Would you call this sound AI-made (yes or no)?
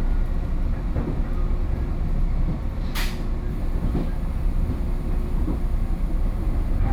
no